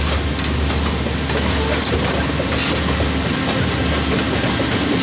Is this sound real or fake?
real